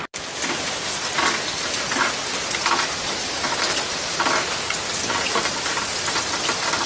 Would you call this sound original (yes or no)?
yes